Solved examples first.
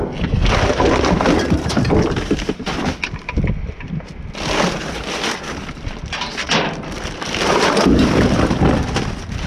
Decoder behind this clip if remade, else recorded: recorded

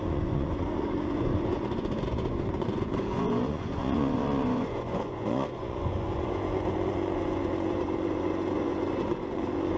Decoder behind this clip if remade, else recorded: remade, vocoder, Vocos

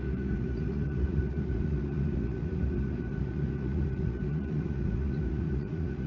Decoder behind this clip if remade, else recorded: remade, vocoder, Vocos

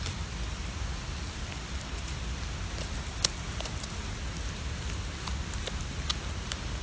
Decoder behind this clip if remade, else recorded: recorded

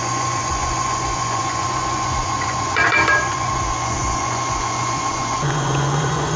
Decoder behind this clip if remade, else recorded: remade, vocoder, Vocos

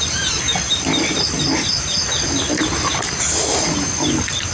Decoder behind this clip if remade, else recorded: recorded